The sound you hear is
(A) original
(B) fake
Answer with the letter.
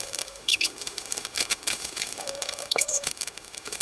B